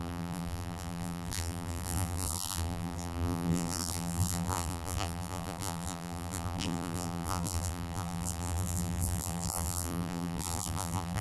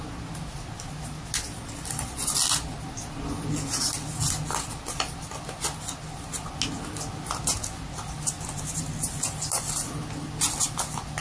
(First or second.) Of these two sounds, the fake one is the first